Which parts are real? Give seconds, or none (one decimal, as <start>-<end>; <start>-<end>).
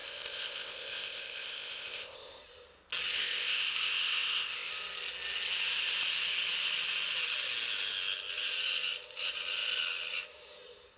2.4-3.2; 4.7-11.0